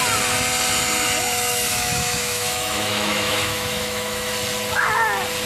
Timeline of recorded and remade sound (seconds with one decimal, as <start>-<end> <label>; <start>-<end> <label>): 0.0-1.7 recorded; 1.7-4.3 remade; 4.3-5.5 recorded